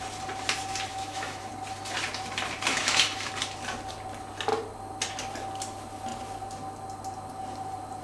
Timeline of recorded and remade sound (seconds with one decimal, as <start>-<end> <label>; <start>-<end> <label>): 0.0-0.9 recorded; 0.9-1.5 remade; 1.5-2.7 recorded; 2.7-3.3 remade; 3.3-8.0 recorded